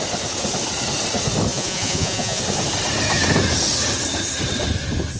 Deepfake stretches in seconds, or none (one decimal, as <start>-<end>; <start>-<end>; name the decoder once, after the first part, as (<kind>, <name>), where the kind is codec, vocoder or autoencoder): 1.5-2.4 (vocoder, Vocos)